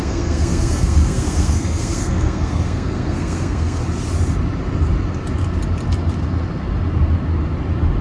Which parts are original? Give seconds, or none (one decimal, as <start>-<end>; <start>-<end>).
3.8-8.0